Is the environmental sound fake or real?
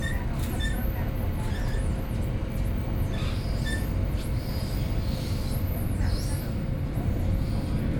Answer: real